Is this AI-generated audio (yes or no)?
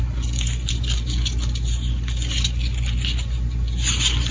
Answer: no